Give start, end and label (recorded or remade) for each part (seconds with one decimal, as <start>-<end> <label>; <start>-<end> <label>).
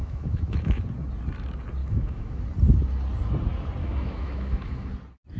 0.0-0.8 remade; 0.8-1.8 recorded; 1.8-2.4 remade; 2.4-3.8 recorded; 3.8-4.9 remade; 4.9-5.4 recorded